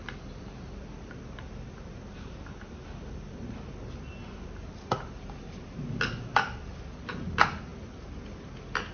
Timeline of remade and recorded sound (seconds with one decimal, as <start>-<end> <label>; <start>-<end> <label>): 0.0-7.7 remade; 7.7-8.9 recorded